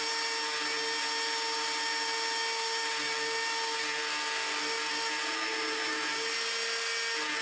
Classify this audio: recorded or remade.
recorded